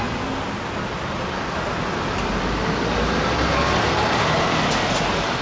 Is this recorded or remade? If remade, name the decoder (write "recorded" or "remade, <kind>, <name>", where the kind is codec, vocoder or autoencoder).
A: recorded